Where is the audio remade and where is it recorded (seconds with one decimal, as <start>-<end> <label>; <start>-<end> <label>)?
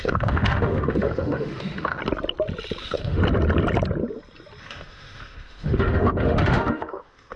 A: 0.0-2.0 remade; 2.0-2.8 recorded; 2.8-3.2 remade; 3.2-4.6 recorded; 4.6-7.4 remade